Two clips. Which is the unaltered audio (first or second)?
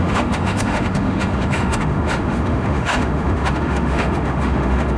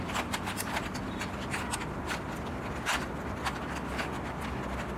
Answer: second